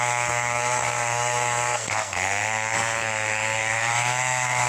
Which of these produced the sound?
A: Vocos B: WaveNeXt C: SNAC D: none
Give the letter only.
C